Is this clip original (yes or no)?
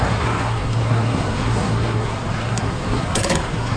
no